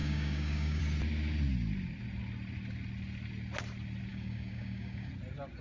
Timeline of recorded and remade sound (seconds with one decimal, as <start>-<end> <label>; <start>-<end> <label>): 0.0-0.8 remade; 0.8-4.1 recorded; 4.1-5.1 remade; 5.1-5.6 recorded